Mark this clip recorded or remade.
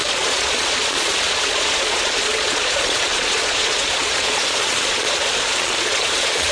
remade